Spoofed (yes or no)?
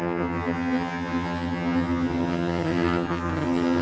yes